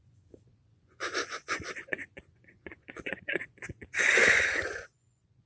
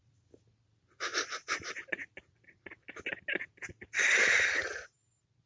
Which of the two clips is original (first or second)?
second